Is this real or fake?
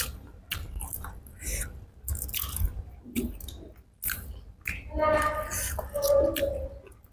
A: real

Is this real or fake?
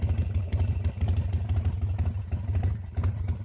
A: real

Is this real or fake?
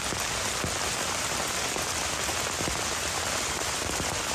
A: real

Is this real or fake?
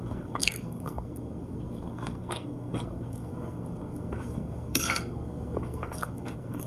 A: fake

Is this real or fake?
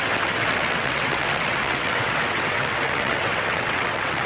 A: fake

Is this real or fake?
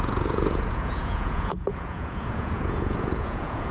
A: fake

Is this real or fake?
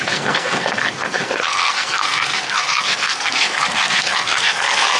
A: fake